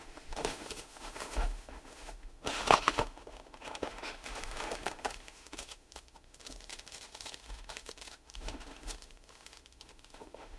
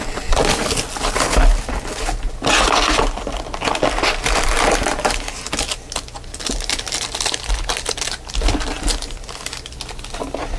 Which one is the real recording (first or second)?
second